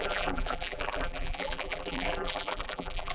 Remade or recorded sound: remade